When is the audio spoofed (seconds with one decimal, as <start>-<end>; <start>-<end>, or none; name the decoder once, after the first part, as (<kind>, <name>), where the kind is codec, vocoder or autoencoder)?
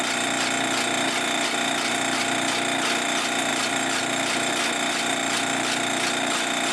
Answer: 3.5-4.5 (vocoder, BigVGAN v2); 5.2-6.3